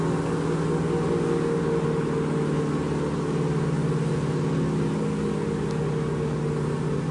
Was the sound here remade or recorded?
recorded